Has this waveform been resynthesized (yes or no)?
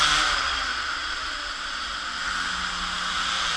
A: no